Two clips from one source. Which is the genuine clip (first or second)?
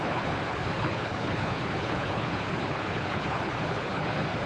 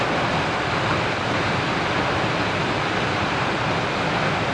second